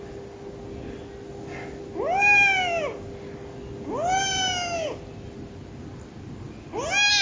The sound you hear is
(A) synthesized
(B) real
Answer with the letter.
B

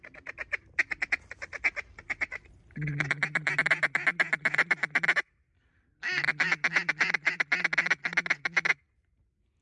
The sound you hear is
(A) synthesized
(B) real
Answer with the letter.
B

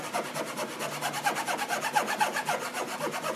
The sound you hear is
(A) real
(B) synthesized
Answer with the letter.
A